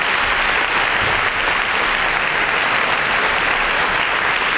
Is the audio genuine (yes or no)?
yes